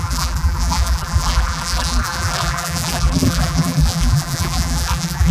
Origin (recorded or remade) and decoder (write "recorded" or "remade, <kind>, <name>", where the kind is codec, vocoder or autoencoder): remade, vocoder, BigVGAN v2